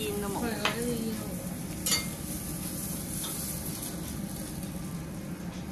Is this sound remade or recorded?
recorded